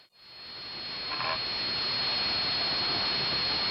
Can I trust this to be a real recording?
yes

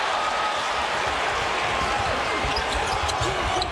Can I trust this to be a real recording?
yes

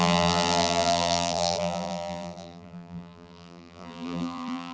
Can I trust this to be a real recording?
no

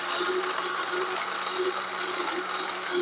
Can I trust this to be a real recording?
yes